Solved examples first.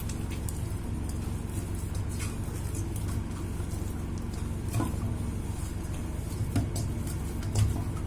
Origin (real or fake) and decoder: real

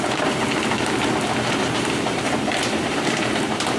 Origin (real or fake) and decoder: fake, vocoder, BigVGAN v2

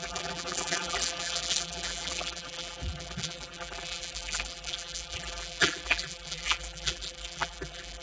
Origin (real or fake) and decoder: fake, vocoder, BigVGAN v2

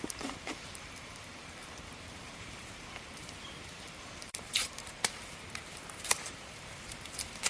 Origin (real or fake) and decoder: fake, vocoder, BigVGAN v2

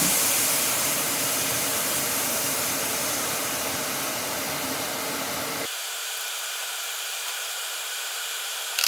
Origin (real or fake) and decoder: fake, vocoder, BigVGAN v2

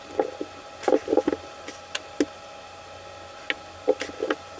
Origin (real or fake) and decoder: real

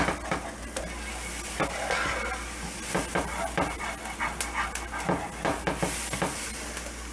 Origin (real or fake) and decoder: real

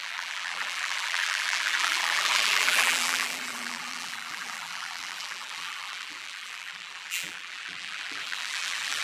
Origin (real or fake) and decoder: fake, vocoder, BigVGAN v2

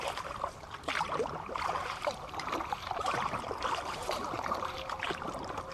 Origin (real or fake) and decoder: fake, vocoder, BigVGAN v2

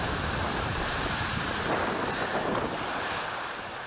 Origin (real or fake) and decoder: fake, vocoder, BigVGAN v2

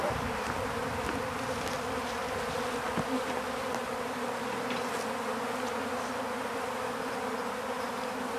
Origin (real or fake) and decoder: real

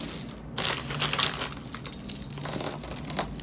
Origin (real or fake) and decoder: real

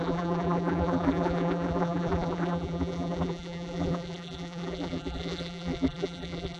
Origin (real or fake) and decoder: fake, vocoder, BigVGAN v2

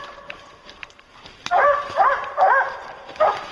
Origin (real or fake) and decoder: fake, vocoder, BigVGAN v2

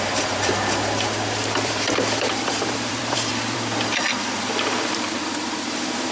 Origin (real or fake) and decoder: fake, vocoder, BigVGAN v2